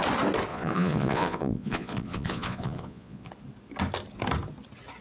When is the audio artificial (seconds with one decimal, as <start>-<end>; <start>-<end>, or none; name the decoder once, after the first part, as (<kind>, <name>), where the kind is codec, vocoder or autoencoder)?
0.5-3.3 (vocoder, Vocos)